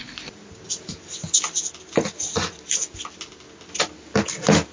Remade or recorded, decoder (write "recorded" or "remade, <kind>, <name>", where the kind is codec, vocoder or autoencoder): recorded